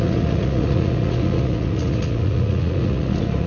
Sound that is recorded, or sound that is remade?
remade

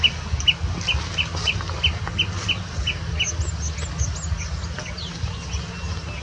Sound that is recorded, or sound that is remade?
recorded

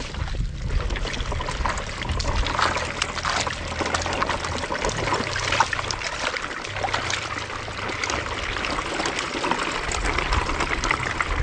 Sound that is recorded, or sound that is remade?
recorded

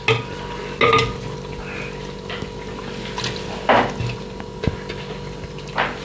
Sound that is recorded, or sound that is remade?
recorded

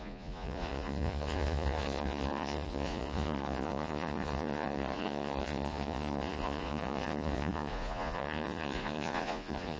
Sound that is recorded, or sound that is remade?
remade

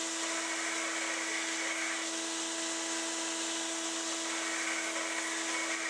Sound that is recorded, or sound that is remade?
recorded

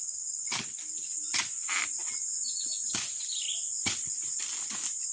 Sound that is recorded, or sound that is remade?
recorded